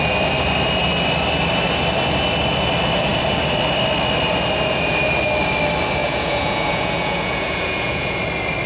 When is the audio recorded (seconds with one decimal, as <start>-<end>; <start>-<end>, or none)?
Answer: 0.0-6.0; 8.2-8.7